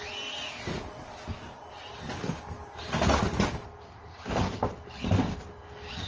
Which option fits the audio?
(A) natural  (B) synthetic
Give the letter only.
A